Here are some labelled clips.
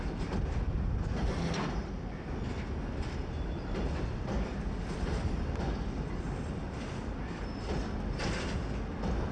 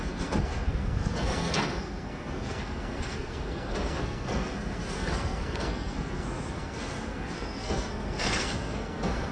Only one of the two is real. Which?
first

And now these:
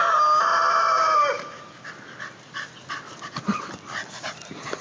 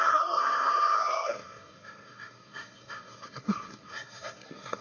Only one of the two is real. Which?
first